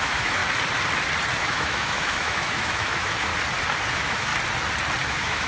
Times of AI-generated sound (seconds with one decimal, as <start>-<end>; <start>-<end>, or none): 0.0-0.4; 1.4-3.3; 3.9-4.3; 5.1-5.5